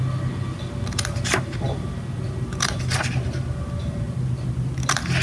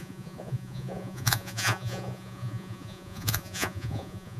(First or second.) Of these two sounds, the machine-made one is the second